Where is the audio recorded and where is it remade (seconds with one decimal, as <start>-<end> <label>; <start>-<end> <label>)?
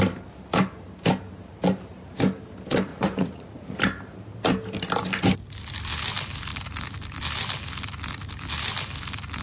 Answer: 0.0-2.9 recorded; 2.9-3.8 remade; 3.8-9.4 recorded